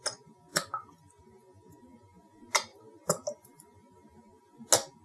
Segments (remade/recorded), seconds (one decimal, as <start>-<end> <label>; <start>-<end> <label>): 0.0-0.5 recorded; 0.5-1.2 remade; 1.2-5.0 recorded